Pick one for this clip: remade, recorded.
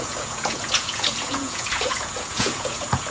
remade